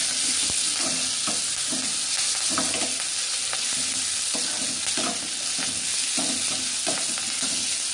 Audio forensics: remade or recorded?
recorded